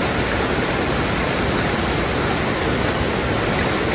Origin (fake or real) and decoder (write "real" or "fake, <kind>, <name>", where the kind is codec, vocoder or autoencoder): real